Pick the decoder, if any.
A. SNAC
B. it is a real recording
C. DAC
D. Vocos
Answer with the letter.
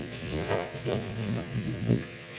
D